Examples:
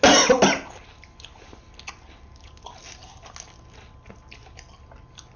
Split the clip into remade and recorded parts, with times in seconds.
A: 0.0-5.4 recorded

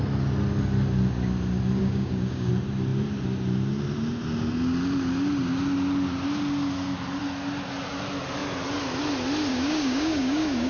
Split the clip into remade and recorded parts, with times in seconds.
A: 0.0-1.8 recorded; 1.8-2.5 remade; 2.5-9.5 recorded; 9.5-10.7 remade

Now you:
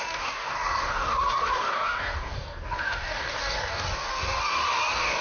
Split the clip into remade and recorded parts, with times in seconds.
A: 0.0-5.2 remade

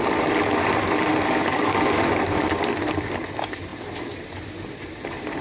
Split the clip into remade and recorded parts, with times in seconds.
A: 0.0-1.1 recorded; 1.1-2.4 remade; 2.4-5.4 recorded

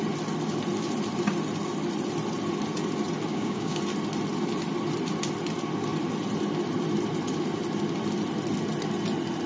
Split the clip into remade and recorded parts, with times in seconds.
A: 0.0-3.3 recorded; 3.3-3.8 remade; 3.8-9.5 recorded

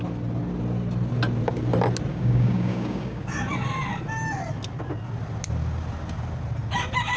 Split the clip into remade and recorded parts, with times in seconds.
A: 0.0-2.1 recorded; 2.1-3.2 remade; 3.2-7.2 recorded